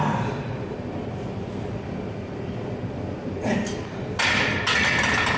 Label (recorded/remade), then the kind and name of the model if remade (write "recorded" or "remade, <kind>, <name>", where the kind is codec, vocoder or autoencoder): recorded